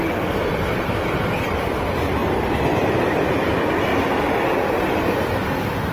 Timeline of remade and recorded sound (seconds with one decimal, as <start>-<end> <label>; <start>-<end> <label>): 0.0-5.9 recorded